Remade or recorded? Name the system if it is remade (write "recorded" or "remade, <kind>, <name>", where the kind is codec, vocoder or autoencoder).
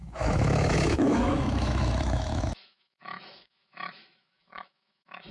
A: remade, autoencoder, DAC-VAE